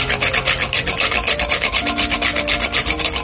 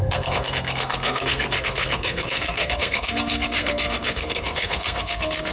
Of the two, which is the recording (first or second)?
first